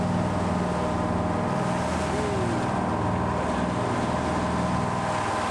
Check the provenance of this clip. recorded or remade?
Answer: recorded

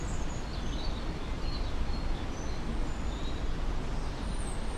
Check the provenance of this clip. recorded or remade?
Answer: recorded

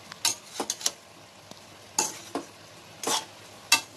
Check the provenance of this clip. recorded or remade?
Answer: recorded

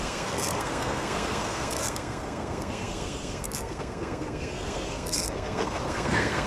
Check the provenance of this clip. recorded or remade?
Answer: remade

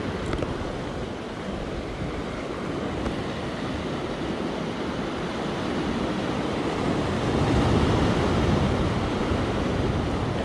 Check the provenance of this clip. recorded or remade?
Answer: recorded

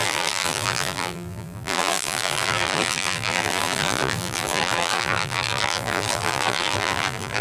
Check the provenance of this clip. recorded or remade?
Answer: remade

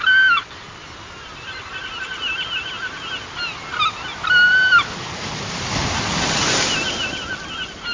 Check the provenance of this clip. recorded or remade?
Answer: recorded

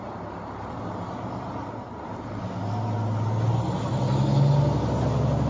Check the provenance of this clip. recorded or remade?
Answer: recorded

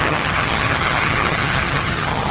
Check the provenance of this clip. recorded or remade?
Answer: remade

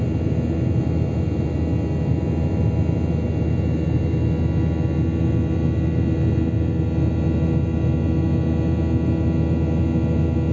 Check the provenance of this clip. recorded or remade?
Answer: recorded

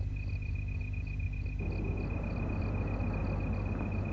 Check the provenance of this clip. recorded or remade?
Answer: recorded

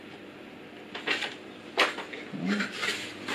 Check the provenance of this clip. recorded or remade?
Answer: recorded